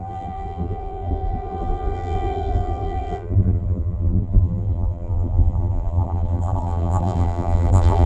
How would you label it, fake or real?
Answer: fake